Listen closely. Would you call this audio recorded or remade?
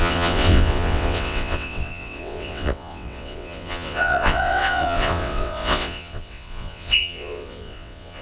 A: remade